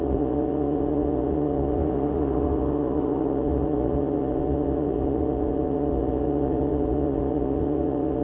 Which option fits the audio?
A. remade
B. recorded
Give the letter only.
A